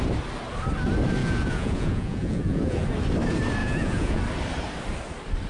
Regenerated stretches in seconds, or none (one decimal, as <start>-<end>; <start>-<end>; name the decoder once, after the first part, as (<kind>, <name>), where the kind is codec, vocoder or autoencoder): 1.2-2.8 (vocoder, Vocos); 3.6-4.2